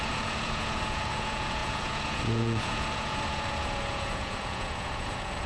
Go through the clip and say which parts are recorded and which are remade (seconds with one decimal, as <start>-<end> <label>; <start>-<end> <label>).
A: 0.0-5.5 remade